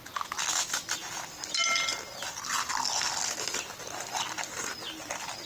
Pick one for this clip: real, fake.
real